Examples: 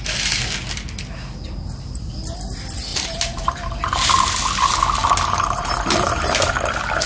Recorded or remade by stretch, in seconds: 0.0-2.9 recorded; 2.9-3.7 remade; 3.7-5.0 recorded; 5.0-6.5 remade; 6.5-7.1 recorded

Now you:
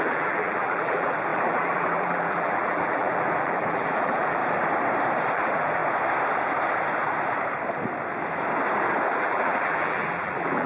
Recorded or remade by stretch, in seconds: 0.0-4.4 remade; 4.4-5.3 recorded; 5.3-5.8 remade; 5.8-9.2 recorded; 9.2-10.7 remade